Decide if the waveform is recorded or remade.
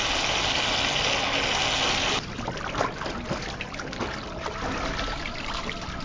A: recorded